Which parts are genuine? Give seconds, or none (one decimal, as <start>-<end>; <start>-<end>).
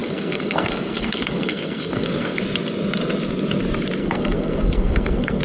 2.4-4.0